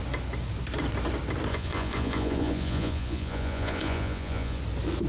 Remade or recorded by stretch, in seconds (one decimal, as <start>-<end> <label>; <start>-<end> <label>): 0.0-1.5 recorded; 1.5-4.6 remade; 4.6-5.1 recorded